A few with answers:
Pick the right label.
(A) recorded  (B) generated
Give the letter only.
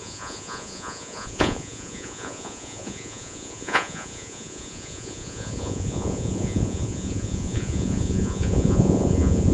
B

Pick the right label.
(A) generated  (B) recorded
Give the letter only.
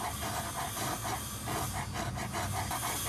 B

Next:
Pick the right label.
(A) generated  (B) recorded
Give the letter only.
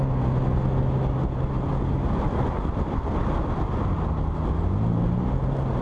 B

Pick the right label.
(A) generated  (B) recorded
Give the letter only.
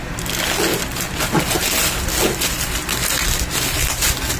B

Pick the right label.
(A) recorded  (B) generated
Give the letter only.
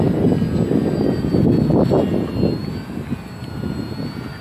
A